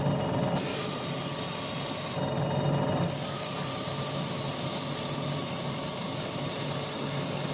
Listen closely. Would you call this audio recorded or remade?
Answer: recorded